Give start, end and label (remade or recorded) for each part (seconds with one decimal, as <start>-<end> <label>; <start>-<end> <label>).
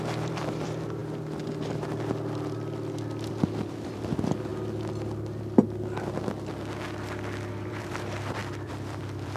0.0-1.0 remade; 1.0-3.3 recorded; 3.3-4.5 remade; 4.5-7.5 recorded; 7.5-9.4 remade